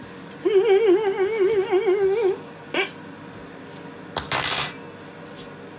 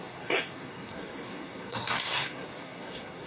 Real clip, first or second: first